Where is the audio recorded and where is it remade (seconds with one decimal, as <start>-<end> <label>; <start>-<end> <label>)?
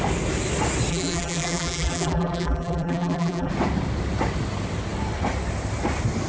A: 0.0-0.9 recorded; 0.9-3.5 remade; 3.5-6.3 recorded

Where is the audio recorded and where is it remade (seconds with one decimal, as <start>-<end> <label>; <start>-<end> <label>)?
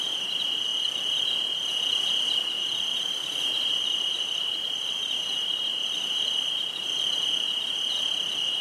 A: 0.0-2.9 recorded; 2.9-7.0 remade; 7.0-8.6 recorded